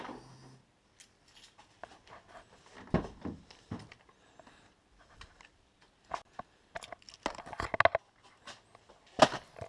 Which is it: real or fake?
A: real